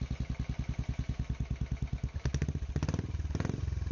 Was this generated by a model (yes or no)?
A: no